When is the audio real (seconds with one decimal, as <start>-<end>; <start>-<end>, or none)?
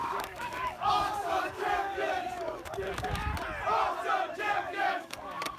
3.3-4.4